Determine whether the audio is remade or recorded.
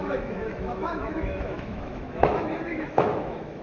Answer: remade